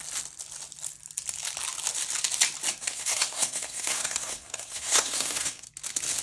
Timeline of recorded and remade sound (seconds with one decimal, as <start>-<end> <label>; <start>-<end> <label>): 0.0-2.8 recorded; 2.8-5.7 remade; 5.7-6.2 recorded